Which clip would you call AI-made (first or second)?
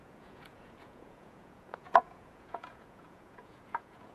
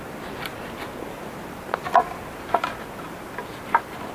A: first